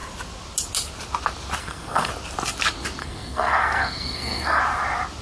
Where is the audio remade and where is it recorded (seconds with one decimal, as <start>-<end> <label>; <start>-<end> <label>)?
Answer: 0.0-1.6 recorded; 1.6-2.1 remade; 2.1-3.0 recorded; 3.0-4.6 remade; 4.6-5.2 recorded